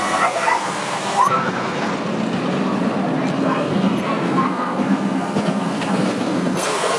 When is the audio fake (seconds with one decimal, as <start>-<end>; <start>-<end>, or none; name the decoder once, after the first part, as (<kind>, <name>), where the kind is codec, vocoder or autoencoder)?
0.0-1.9 (codec, SNAC); 3.4-7.0